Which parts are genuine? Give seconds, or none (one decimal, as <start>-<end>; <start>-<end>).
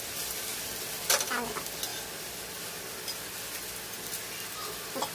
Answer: 0.0-5.1